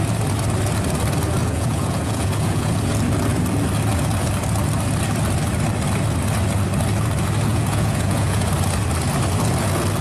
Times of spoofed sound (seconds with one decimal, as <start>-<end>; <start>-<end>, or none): 1.4-2.8; 7.5-8.5